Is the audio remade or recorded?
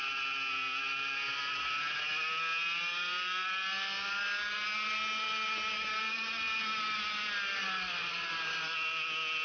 recorded